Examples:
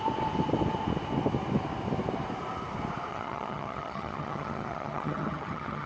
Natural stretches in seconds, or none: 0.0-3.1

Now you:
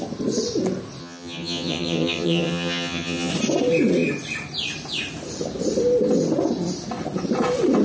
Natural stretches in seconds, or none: 0.0-1.0; 3.3-7.8

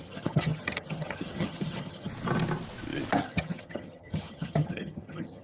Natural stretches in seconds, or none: 2.1-3.2

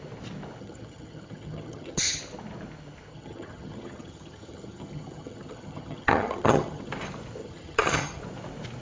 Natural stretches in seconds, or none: 0.0-0.6; 2.2-3.1; 6.9-7.4; 8.2-8.8

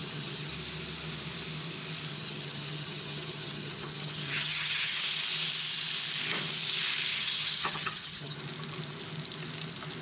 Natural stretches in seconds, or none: 0.5-2.1; 5.0-7.1; 8.4-10.0

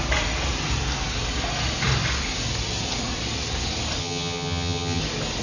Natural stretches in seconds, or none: 0.0-4.0; 5.0-5.4

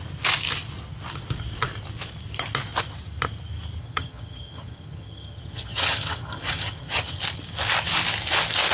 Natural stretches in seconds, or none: 0.0-3.8; 7.2-8.7